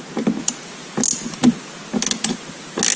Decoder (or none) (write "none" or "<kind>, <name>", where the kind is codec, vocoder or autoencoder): none